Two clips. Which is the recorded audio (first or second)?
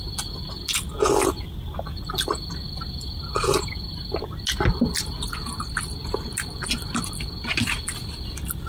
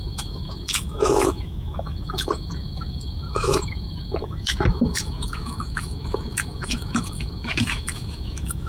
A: first